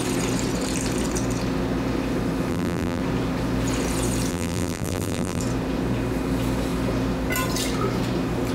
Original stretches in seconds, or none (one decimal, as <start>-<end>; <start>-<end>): 0.0-2.5; 3.0-4.3; 5.4-8.5